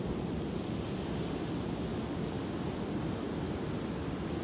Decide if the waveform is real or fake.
real